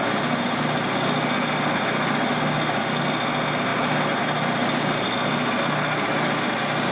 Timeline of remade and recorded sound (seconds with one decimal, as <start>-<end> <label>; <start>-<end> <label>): 0.0-6.9 recorded